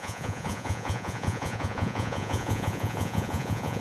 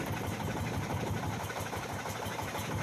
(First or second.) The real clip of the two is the second